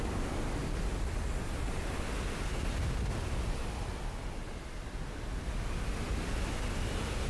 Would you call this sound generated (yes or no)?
no